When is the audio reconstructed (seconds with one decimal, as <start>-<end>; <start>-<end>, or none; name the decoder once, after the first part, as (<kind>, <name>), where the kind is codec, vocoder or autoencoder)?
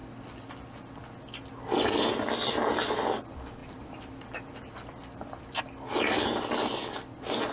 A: 3.6-5.6 (vocoder, BigVGAN v2)